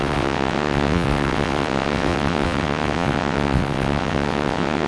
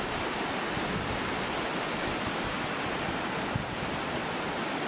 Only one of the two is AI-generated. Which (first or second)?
first